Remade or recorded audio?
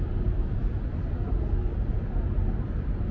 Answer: recorded